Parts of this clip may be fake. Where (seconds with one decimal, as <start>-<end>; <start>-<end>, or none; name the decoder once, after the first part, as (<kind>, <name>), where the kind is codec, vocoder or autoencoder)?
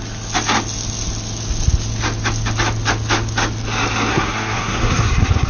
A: 4.1-5.5 (codec, SNAC)